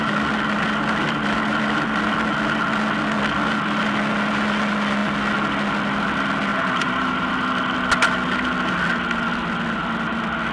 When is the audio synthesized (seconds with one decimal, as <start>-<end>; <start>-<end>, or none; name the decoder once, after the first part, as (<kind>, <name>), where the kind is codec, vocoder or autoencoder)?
6.5-7.3 (vocoder, BigVGAN v2)